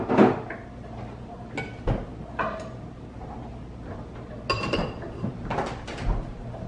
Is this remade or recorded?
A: recorded